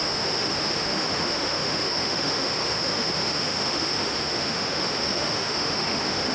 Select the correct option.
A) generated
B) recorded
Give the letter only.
A